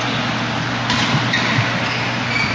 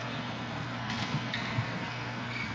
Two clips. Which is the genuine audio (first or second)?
first